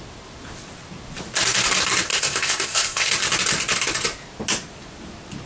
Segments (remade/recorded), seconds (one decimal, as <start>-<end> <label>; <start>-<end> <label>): 0.0-2.1 recorded; 2.1-3.1 remade; 3.1-5.5 recorded